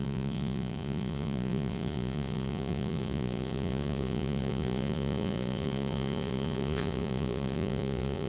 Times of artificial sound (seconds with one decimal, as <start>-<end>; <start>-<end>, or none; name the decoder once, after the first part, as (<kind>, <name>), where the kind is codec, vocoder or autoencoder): 0.0-8.3 (vocoder, Vocos)